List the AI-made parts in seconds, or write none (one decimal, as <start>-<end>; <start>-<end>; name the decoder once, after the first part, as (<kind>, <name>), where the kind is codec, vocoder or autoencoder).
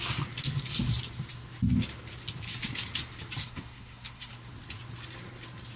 3.4-4.3 (codec, SNAC)